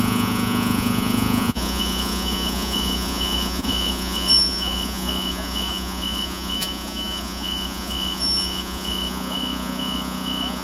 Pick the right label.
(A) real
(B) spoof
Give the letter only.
B